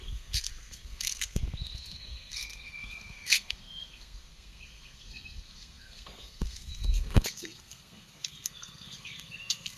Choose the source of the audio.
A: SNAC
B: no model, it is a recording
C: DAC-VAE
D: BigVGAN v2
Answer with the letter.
A